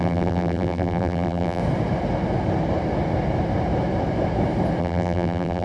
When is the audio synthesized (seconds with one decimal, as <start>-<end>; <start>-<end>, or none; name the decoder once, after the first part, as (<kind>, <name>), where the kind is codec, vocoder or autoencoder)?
0.0-1.6 (vocoder, BigVGAN v2); 4.8-5.6